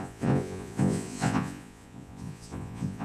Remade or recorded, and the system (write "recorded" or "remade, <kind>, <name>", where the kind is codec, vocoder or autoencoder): remade, vocoder, Vocos